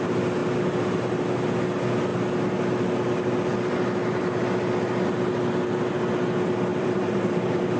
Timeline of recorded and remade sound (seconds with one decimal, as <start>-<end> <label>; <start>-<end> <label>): 0.0-6.7 recorded; 6.7-7.8 remade